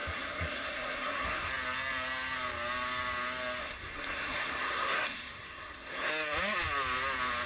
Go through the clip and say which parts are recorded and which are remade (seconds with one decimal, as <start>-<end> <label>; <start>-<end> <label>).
0.0-1.5 remade; 1.5-3.6 recorded; 3.6-6.1 remade; 6.1-7.5 recorded